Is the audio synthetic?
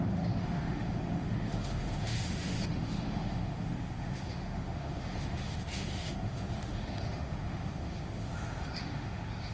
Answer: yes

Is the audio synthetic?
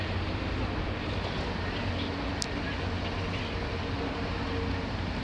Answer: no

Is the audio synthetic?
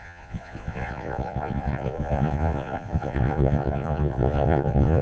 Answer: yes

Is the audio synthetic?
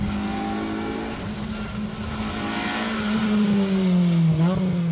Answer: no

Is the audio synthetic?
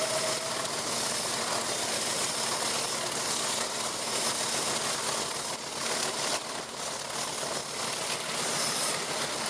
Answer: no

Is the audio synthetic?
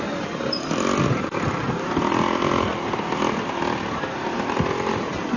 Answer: no